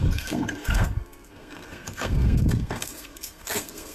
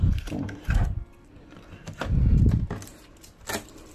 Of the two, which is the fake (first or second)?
first